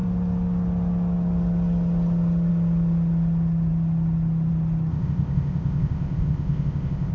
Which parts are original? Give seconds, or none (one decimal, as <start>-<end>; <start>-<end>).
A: 0.0-4.9